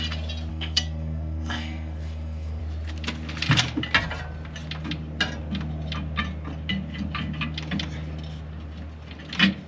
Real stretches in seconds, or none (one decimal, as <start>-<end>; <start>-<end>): 0.0-0.5; 2.6-9.7